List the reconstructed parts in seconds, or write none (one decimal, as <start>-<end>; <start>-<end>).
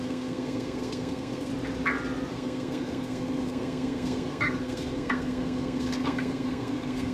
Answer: 0.0-1.5; 2.3-7.1